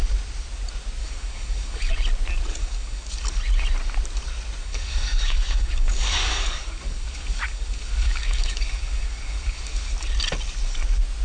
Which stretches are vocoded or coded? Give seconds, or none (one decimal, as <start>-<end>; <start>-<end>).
1.0-1.9; 2.6-3.1; 4.6-9.9